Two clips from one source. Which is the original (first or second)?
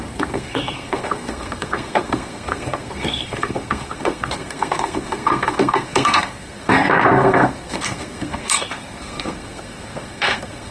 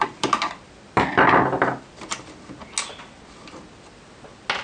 second